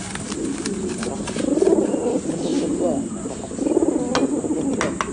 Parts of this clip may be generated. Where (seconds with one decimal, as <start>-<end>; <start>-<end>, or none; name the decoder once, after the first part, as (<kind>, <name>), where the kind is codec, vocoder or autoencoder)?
none

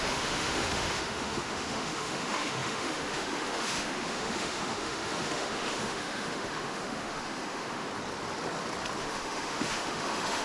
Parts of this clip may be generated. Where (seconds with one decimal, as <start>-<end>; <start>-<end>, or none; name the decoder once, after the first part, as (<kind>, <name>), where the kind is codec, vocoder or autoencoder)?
0.0-7.9 (autoencoder, DAC-VAE); 9.0-10.4

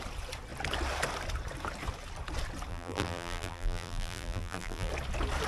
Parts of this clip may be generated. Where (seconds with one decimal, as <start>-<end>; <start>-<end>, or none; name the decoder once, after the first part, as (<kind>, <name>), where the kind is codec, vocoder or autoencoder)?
2.7-4.9 (vocoder, BigVGAN v2)